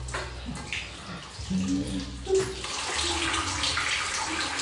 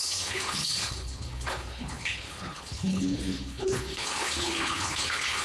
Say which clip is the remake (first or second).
second